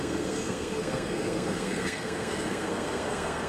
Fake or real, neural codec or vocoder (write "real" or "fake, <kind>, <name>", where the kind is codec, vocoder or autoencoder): fake, codec, SNAC